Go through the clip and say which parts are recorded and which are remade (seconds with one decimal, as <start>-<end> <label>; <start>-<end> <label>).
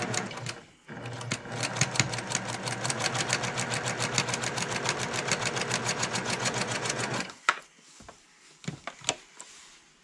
0.0-5.8 recorded; 5.8-7.6 remade; 7.6-10.0 recorded